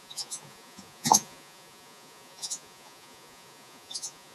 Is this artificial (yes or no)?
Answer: yes